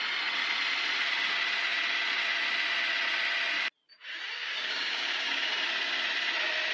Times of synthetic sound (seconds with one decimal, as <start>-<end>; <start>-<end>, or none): 4.4-5.5